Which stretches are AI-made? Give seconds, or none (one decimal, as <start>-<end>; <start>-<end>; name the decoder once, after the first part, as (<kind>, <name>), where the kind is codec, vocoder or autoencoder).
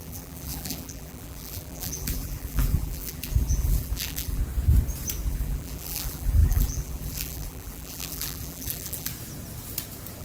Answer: 0.0-4.4 (vocoder, BigVGAN v2); 5.3-9.1